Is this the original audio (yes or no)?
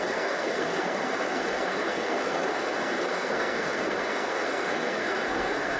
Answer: no